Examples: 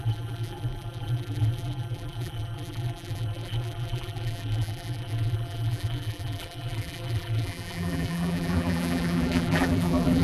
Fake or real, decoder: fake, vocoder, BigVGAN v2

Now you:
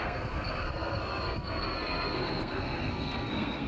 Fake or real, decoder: fake, codec, SNAC